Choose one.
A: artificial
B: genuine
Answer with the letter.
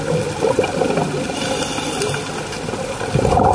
B